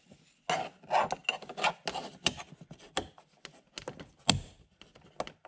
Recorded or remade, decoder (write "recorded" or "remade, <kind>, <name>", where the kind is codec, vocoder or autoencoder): recorded